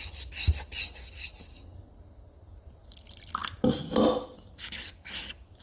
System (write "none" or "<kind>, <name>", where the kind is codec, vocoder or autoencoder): none